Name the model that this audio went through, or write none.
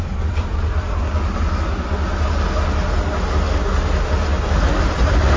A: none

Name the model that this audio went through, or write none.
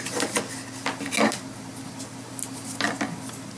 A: none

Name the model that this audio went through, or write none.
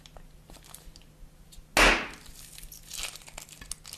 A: none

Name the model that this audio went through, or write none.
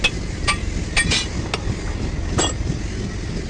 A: none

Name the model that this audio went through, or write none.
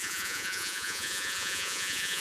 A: vocoder, Vocos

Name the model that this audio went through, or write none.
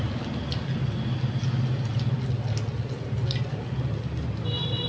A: none